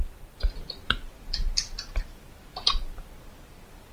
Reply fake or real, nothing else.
real